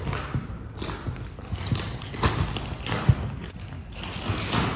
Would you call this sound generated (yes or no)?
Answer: no